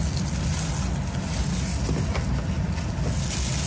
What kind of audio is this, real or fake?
real